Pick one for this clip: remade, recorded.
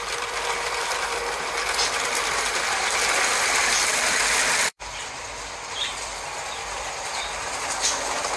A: remade